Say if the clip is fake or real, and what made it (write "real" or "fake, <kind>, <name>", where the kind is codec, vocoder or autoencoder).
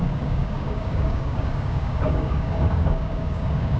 fake, codec, DAC